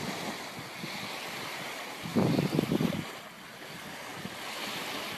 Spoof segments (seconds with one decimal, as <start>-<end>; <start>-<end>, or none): none